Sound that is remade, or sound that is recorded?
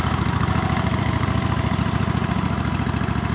remade